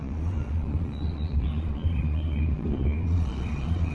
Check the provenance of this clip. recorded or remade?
remade